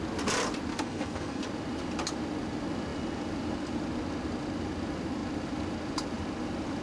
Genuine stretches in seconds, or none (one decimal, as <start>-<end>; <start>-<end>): 0.0-0.7; 1.4-6.8